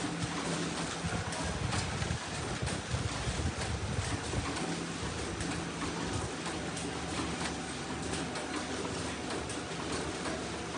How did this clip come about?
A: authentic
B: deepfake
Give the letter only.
A